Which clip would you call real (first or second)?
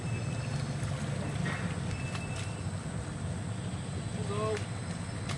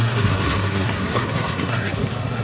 first